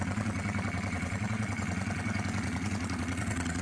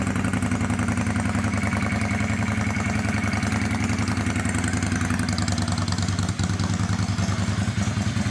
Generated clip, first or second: first